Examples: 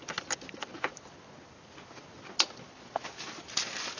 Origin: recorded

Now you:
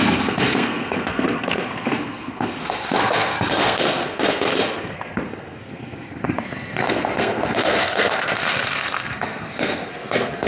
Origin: remade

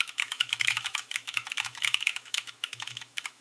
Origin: remade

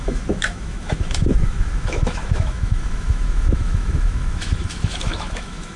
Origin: remade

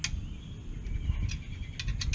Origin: recorded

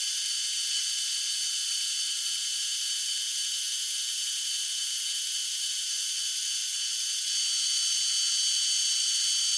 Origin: recorded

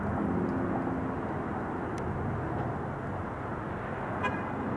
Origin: recorded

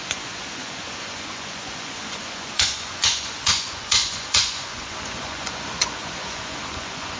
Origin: remade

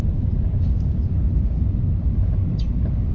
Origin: remade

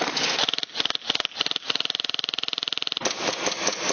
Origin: recorded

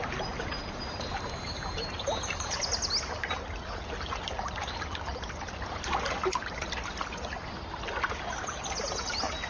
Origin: recorded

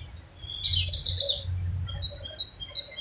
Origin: recorded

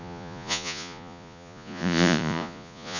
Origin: remade